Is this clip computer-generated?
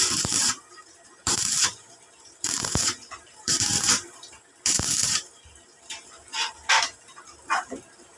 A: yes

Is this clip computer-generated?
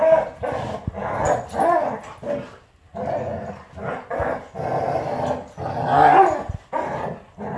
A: no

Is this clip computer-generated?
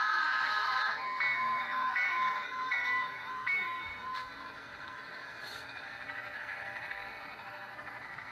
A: yes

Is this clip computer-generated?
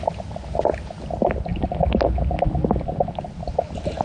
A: no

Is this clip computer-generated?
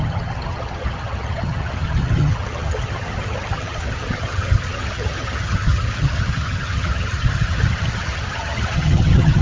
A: yes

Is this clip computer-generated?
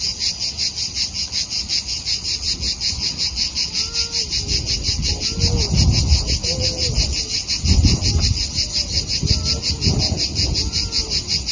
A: no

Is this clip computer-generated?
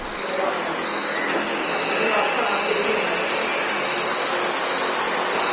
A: no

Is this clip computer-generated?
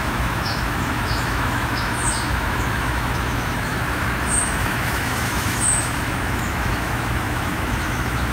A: yes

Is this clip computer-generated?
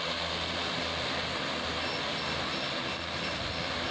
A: no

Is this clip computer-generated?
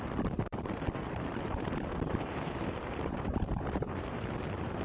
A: yes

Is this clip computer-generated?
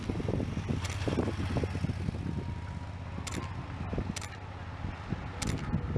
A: no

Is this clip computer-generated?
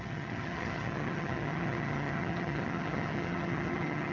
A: yes